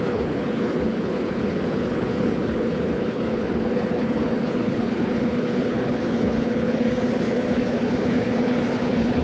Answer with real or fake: fake